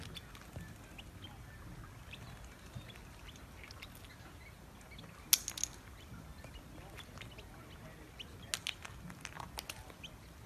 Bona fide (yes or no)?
yes